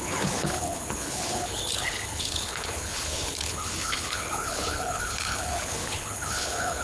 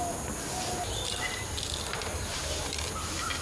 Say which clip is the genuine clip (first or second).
second